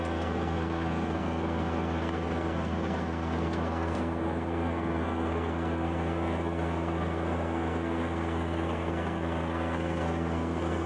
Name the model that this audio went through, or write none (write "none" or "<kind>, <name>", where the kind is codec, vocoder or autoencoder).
codec, SNAC